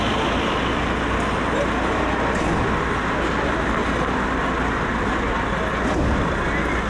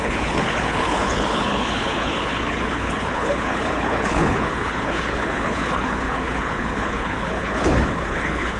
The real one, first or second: first